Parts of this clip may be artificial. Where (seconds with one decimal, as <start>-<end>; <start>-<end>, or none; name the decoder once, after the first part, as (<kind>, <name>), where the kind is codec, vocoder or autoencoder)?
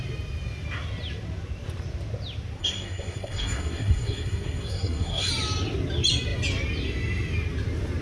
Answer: 2.6-5.3 (codec, SNAC)